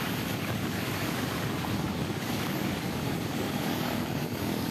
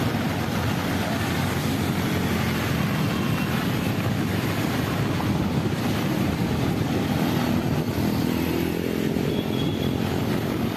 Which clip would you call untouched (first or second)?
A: second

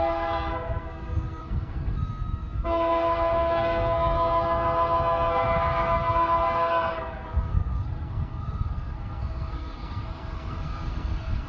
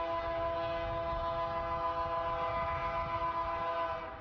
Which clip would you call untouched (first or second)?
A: second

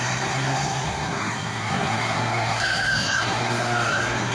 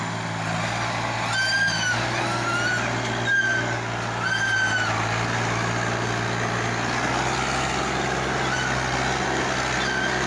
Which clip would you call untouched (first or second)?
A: second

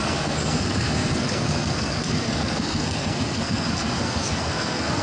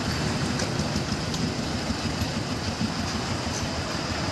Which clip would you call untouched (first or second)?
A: second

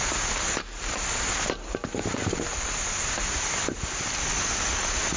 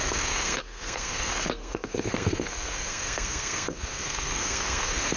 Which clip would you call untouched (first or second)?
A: first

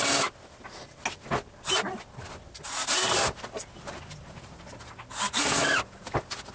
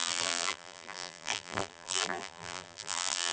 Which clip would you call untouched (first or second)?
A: first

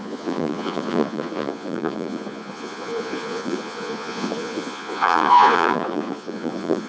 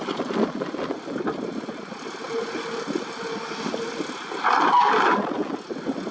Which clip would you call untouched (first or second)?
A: second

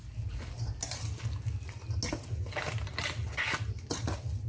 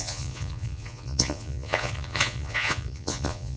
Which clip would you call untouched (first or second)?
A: first